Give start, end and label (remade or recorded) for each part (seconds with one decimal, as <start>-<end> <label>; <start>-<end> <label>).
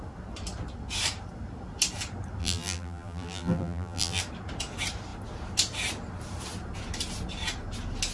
0.0-2.4 recorded; 2.4-4.2 remade; 4.2-8.1 recorded